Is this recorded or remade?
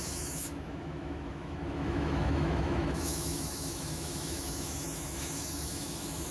remade